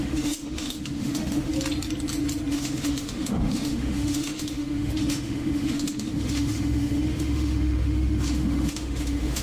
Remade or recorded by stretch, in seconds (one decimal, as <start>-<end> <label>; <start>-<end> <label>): 0.0-1.5 remade; 1.5-2.5 recorded; 2.5-9.4 remade